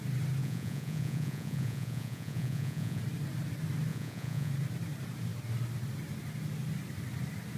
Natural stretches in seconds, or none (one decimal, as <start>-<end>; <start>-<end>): 0.0-0.4; 3.0-3.9; 4.5-7.6

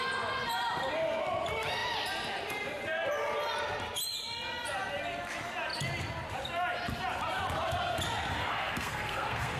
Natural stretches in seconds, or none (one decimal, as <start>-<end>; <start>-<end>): 0.0-8.3

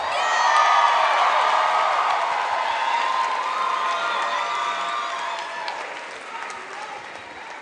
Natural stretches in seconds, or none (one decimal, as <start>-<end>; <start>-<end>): 0.0-7.6